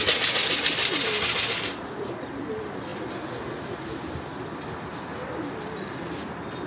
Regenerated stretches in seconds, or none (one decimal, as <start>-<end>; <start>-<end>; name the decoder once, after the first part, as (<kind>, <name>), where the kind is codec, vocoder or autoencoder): none